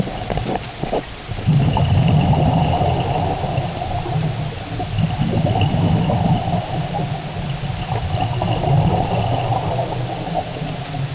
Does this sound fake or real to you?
real